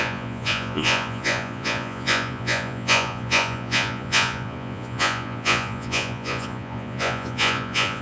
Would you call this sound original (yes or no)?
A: no